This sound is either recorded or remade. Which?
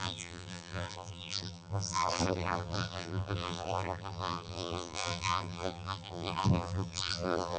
remade